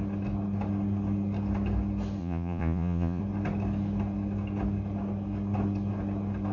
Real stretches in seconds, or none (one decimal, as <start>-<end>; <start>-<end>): 0.0-2.2; 3.2-6.5